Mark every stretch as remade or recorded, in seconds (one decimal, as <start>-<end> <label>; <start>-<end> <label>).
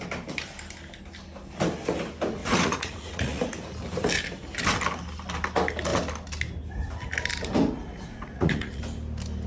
0.0-2.4 recorded; 2.4-3.4 remade; 3.4-7.9 recorded; 7.9-8.8 remade; 8.8-9.5 recorded